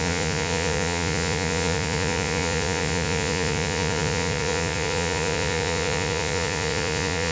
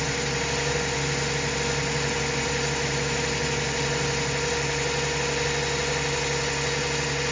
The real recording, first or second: second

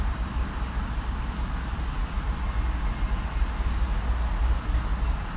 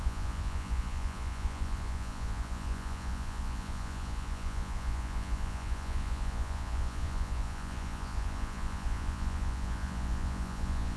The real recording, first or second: first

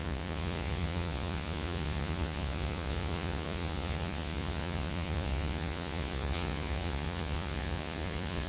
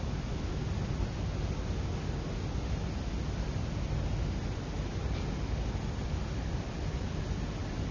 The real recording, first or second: second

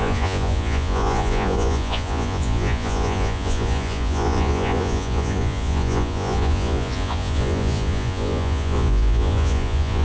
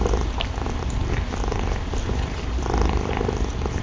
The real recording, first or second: second